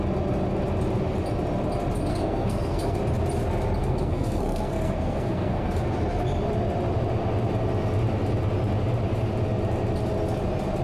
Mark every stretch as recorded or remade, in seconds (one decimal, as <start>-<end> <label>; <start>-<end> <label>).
0.0-2.1 recorded; 2.1-3.0 remade; 3.0-3.8 recorded; 3.8-5.8 remade; 5.8-10.8 recorded

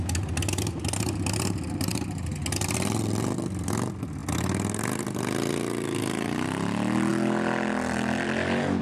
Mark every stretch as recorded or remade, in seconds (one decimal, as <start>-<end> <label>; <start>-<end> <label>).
0.0-8.8 recorded

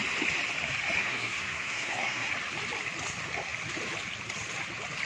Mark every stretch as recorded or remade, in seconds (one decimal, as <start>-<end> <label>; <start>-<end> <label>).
0.0-1.0 recorded; 1.0-2.3 remade; 2.3-5.1 recorded

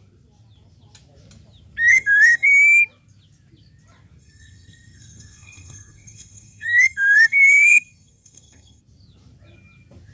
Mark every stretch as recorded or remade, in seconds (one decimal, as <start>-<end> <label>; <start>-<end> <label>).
0.0-1.9 recorded; 1.9-2.5 remade; 2.5-4.2 recorded; 4.2-8.8 remade; 8.8-10.1 recorded